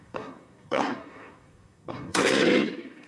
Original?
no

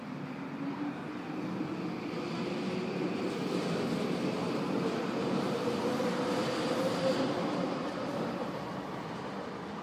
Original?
yes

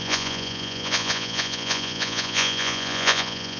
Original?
no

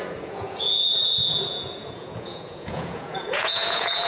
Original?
no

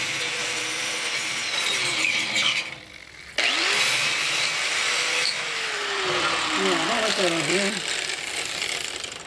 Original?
no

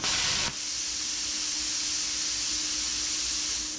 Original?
yes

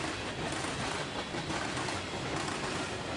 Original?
yes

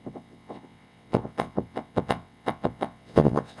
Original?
no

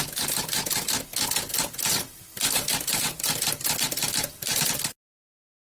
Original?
yes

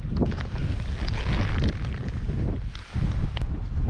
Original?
yes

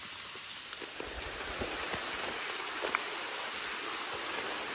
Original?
yes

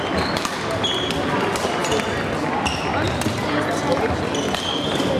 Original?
yes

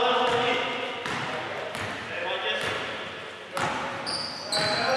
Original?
yes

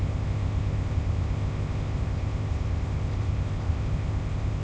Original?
no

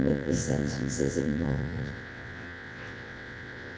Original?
no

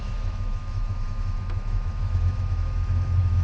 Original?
no